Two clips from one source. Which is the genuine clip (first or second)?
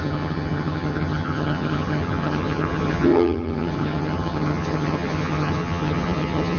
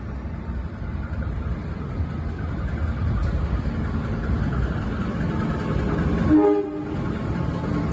second